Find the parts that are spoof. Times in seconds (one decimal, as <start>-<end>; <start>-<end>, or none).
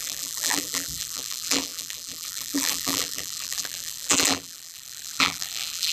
0.0-5.9